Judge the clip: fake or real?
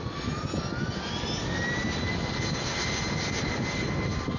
real